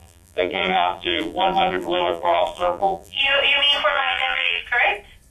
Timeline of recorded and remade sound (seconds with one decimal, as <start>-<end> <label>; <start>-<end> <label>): 0.0-3.2 remade; 3.2-3.9 recorded; 3.9-4.6 remade; 4.6-5.3 recorded